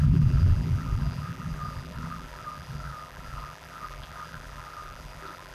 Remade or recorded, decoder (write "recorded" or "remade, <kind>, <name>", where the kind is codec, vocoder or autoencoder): remade, vocoder, BigVGAN v2